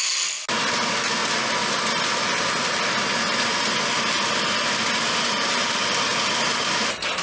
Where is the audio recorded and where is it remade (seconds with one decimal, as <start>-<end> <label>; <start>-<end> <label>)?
0.0-7.2 recorded